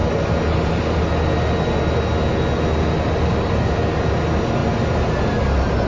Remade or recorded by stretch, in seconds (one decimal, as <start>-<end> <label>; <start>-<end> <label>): 0.0-5.9 recorded